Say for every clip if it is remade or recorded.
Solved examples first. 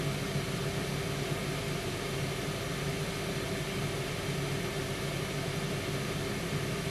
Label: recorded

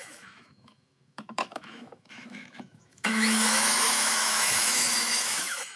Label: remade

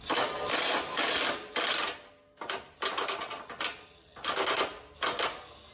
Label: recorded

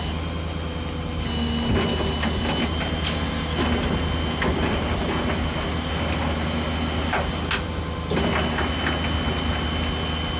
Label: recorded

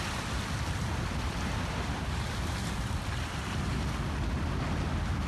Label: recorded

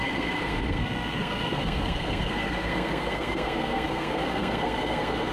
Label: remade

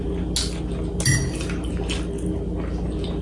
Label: recorded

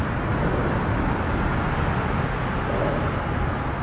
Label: recorded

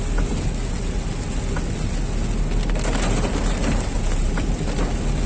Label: recorded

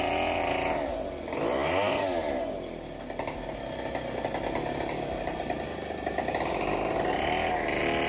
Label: recorded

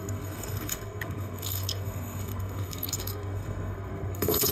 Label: remade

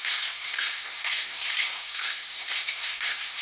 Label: remade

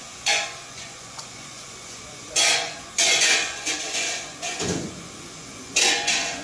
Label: remade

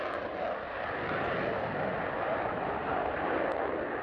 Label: recorded